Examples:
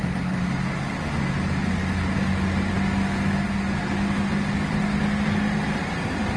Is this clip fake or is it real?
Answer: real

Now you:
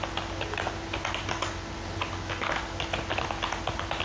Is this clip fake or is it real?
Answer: real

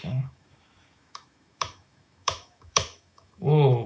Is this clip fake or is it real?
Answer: fake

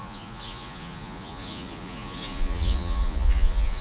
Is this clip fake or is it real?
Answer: fake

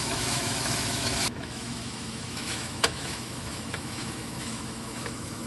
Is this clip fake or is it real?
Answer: fake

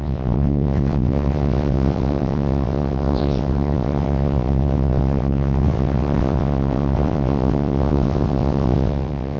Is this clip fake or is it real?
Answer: fake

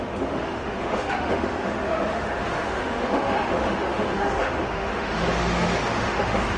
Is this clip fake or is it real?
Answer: fake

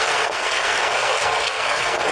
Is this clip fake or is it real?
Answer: fake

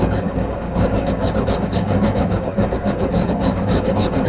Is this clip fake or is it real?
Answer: fake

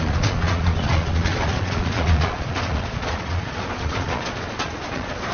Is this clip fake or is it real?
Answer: fake